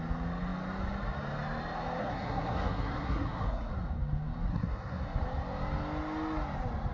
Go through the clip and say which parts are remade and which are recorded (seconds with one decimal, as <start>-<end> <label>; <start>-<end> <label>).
0.0-2.0 recorded; 2.0-3.7 remade; 3.7-4.5 recorded; 4.5-5.2 remade; 5.2-6.9 recorded